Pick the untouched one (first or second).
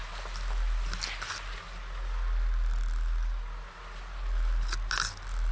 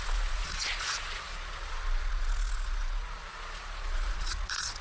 first